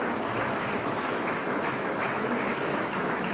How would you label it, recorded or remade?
remade